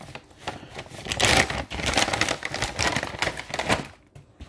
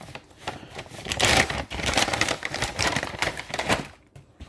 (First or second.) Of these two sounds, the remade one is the second